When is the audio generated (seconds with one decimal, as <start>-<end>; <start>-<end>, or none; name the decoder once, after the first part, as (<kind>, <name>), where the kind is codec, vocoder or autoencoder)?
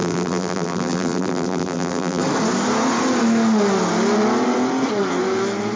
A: 0.0-2.2 (vocoder, BigVGAN v2)